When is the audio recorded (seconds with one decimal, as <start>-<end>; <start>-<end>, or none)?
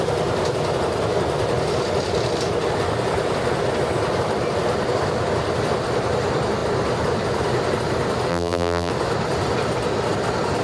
0.0-8.3; 8.9-10.6